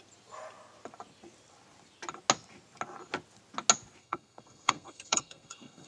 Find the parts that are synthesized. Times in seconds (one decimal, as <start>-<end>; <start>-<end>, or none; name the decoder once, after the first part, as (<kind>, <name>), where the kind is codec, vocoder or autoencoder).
4.0-5.9 (codec, SNAC)